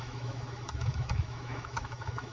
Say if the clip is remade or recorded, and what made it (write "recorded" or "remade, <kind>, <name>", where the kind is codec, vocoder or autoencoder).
remade, autoencoder, DAC-VAE